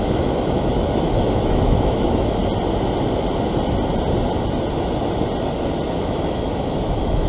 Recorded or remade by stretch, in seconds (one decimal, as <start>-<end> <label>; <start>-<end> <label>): 0.0-2.4 remade; 2.4-6.0 recorded; 6.0-7.3 remade